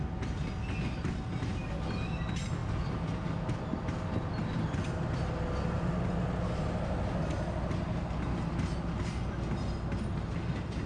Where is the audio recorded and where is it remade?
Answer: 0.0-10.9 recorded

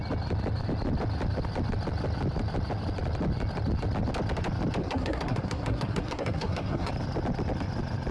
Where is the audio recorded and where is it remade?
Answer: 0.0-4.8 recorded; 4.8-6.9 remade; 6.9-8.1 recorded

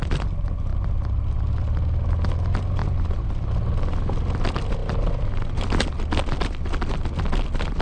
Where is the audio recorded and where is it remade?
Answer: 0.0-7.8 recorded

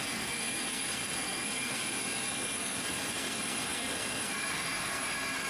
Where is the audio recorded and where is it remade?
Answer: 0.0-5.5 remade

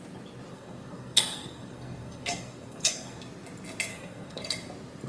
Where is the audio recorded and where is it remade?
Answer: 0.0-0.5 recorded; 0.5-3.2 remade; 3.2-3.9 recorded; 3.9-4.4 remade; 4.4-5.1 recorded

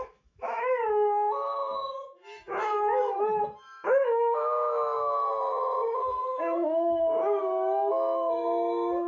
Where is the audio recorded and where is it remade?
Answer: 0.0-9.1 remade

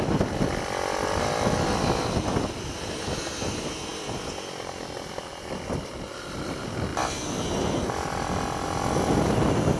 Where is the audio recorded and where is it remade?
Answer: 0.0-9.8 recorded